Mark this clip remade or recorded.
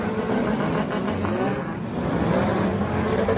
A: recorded